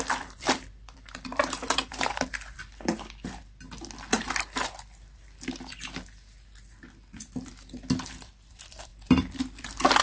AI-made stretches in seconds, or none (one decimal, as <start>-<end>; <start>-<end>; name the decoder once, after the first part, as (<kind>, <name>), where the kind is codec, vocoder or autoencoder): 0.0-3.4 (vocoder, BigVGAN v2); 8.1-10.0